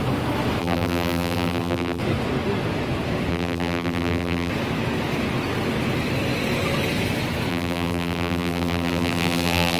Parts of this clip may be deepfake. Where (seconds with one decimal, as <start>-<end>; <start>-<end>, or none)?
0.6-2.0; 3.3-4.5; 7.5-9.8